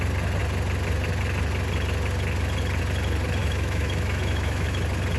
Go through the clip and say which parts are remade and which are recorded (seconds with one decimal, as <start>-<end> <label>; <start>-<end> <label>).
0.0-3.4 recorded; 3.4-4.8 remade; 4.8-5.2 recorded